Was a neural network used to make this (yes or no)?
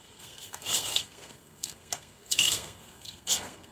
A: yes